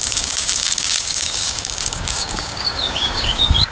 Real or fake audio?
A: fake